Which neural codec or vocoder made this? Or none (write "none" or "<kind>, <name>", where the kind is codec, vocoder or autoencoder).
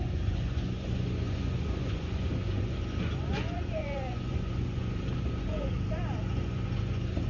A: vocoder, Vocos